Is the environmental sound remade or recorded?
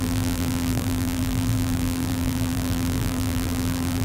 remade